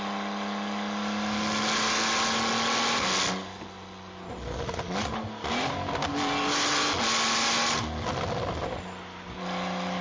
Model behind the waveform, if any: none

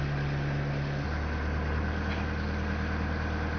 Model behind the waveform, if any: none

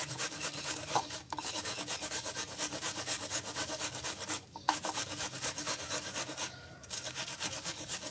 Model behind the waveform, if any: codec, DAC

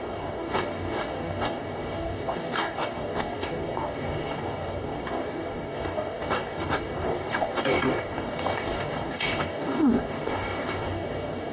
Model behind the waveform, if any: codec, DAC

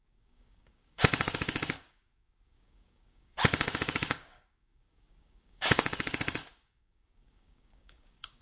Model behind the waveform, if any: codec, DAC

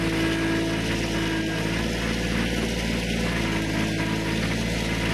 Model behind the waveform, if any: none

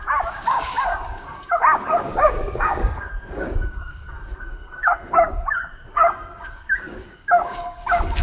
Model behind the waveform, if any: codec, DAC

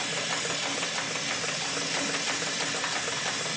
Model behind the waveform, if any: none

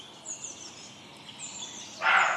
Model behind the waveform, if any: none